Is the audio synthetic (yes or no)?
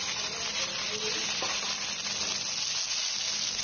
no